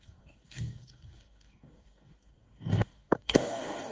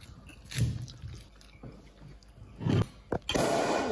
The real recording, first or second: second